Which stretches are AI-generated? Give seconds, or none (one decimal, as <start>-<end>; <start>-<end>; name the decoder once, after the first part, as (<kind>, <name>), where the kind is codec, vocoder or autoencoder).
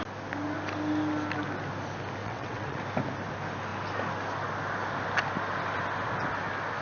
2.2-2.8 (vocoder, WaveNeXt)